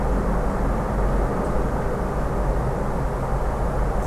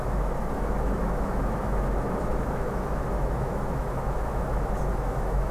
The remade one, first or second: second